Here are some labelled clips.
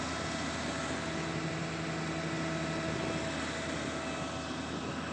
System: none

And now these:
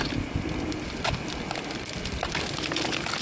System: none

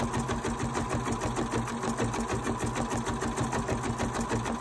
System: none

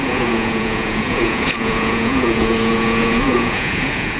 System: vocoder, Vocos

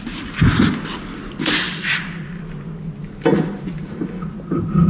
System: none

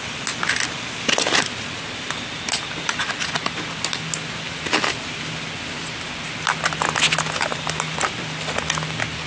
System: none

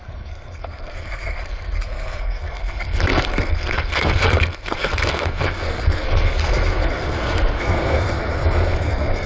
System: codec, SNAC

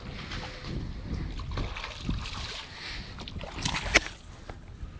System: none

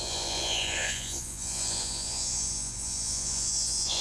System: vocoder, Vocos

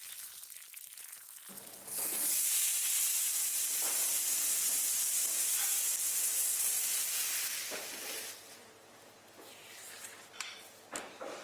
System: none